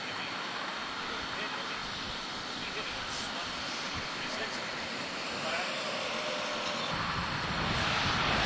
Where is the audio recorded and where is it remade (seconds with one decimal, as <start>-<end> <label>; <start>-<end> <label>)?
0.0-1.8 recorded; 1.8-4.3 remade; 4.3-8.5 recorded

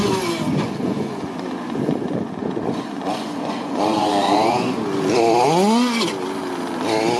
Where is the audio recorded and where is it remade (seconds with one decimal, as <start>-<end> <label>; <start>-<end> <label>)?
0.0-0.5 recorded; 0.5-4.8 remade; 4.8-7.2 recorded

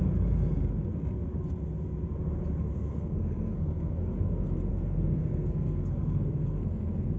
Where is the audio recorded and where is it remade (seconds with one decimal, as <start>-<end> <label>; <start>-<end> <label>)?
0.0-2.9 recorded; 2.9-7.2 remade

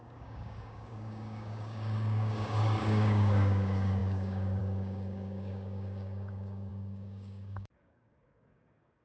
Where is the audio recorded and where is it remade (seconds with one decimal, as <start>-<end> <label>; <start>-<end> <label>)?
0.0-9.0 remade